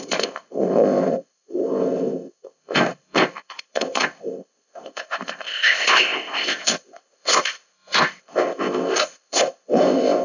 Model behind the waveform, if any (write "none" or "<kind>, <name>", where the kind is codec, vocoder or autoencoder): codec, ZipCodec